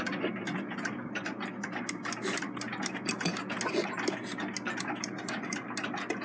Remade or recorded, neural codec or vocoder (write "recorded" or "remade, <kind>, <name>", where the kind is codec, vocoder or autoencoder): recorded